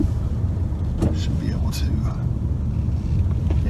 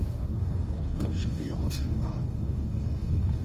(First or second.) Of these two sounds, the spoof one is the second